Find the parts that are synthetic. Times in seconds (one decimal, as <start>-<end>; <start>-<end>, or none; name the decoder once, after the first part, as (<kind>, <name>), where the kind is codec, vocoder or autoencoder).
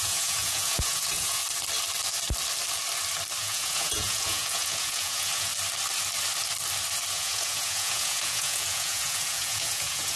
0.0-1.4 (vocoder, Vocos); 3.4-5.5; 7.1-10.2